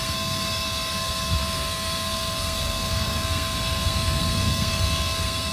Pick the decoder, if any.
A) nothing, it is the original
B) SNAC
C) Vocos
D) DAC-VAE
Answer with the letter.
B